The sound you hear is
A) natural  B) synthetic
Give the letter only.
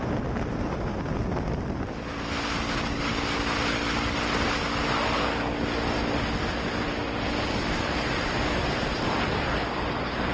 A